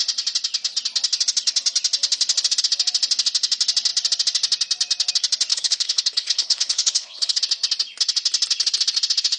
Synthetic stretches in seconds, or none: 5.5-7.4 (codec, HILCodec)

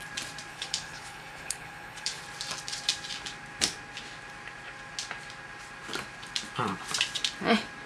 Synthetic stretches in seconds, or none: 0.5-2.2 (codec, HILCodec)

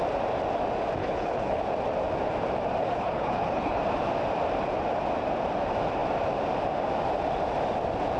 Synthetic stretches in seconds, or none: 1.0-1.6 (codec, HILCodec); 2.8-3.8

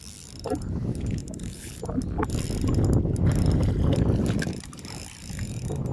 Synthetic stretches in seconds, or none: 1.2-1.8 (codec, HILCodec)

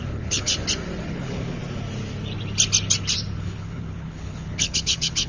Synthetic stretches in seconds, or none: 0.0-0.5 (codec, HILCodec); 1.1-1.6; 3.4-5.3

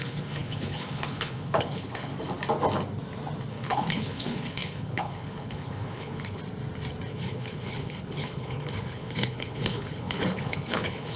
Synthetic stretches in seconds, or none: 0.0-2.1 (codec, HILCodec); 3.5-6.4; 7.1-11.2